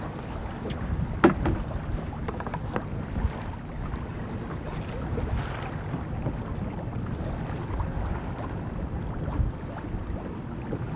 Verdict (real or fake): real